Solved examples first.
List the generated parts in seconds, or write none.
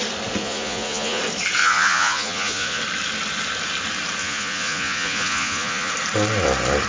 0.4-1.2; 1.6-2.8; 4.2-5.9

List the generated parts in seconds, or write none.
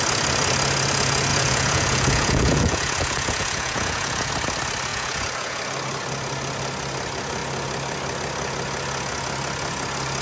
1.3-4.3; 4.9-5.6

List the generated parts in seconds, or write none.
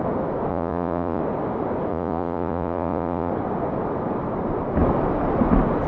0.5-1.2; 1.9-3.3